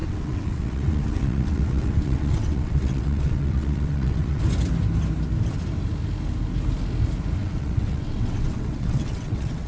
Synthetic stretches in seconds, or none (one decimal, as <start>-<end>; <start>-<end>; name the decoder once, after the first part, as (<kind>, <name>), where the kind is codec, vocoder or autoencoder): 0.0-4.4 (vocoder, WaveNeXt); 7.4-9.7